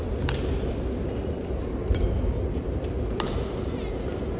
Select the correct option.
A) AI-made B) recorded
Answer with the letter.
B